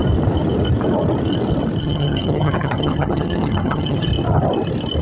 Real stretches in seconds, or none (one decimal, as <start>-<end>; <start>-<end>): 0.0-1.8; 4.1-5.0